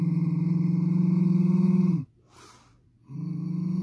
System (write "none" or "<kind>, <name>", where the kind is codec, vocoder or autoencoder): none